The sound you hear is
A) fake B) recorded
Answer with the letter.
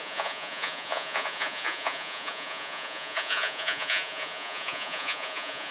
A